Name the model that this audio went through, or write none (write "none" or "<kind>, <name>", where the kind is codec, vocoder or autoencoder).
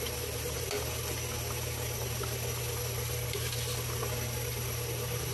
none